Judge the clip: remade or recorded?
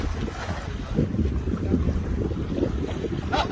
recorded